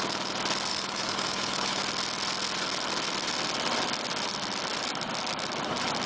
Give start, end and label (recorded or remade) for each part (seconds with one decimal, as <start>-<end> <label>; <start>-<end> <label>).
0.0-0.7 recorded; 0.7-1.8 remade; 1.8-6.1 recorded